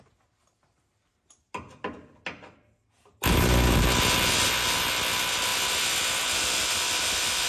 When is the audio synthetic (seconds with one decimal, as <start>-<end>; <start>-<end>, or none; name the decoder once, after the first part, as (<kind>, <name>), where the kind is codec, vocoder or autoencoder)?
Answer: none